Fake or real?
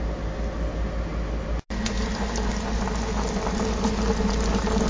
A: real